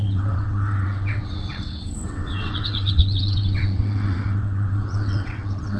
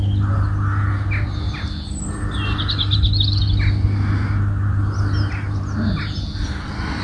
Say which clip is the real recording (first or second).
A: second